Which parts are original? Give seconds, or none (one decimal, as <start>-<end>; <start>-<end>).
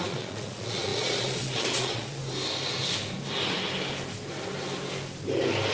2.2-5.7